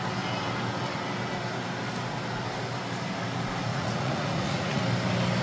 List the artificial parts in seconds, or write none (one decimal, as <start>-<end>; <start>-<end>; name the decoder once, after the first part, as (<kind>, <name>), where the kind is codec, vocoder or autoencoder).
3.7-4.8 (vocoder, Vocos)